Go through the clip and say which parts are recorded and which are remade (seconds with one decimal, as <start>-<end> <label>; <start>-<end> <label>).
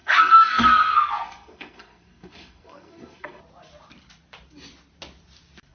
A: 0.0-3.4 remade; 3.4-5.7 recorded